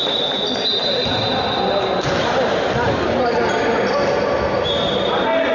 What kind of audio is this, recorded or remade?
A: recorded